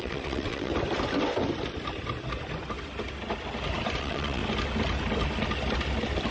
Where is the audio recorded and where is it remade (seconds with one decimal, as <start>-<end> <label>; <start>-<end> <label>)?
0.0-0.7 remade; 0.7-4.0 recorded; 4.0-4.4 remade; 4.4-6.3 recorded